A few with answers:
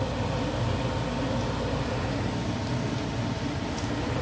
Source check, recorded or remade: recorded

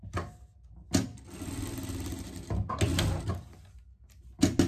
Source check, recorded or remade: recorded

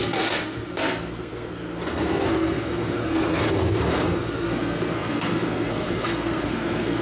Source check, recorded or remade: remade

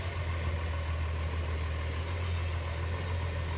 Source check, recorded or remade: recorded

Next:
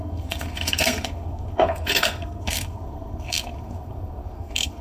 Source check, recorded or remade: remade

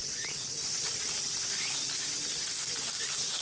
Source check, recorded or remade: recorded